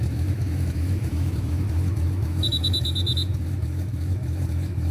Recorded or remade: remade